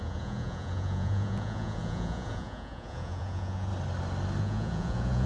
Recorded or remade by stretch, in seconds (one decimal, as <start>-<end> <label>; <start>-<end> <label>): 0.0-3.7 remade; 3.7-4.4 recorded; 4.4-5.3 remade